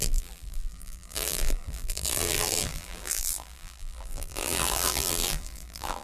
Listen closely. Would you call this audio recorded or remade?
remade